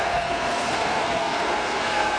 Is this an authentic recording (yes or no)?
no